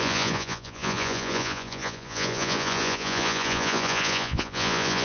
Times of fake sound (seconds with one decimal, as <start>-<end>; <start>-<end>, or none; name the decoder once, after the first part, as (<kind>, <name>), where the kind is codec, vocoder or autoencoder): 0.0-5.0 (vocoder, Vocos)